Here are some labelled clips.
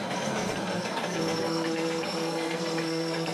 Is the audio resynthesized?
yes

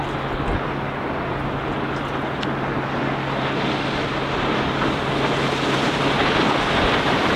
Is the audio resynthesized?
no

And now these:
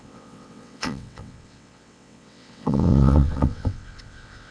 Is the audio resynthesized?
yes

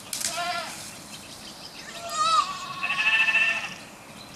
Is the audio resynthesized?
no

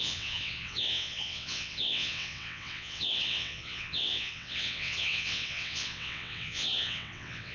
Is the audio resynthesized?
yes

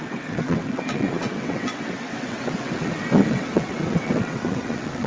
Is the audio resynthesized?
yes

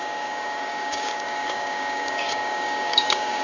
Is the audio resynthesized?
yes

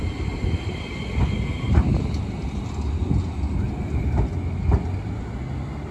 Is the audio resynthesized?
no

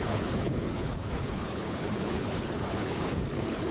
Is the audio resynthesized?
yes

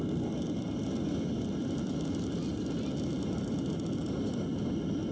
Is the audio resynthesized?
no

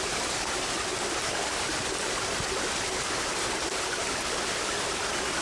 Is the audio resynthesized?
no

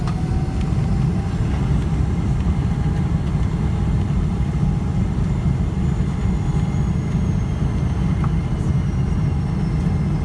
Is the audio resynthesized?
no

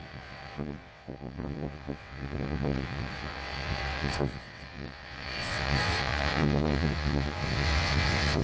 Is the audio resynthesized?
yes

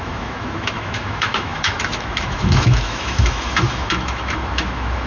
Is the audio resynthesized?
yes